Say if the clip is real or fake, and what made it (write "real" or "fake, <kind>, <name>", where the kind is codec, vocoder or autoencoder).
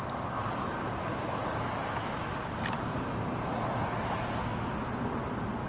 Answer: real